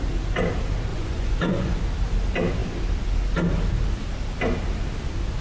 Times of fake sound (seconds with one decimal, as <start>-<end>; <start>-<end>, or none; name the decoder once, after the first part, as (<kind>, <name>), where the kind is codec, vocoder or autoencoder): 0.9-1.8 (vocoder, Vocos)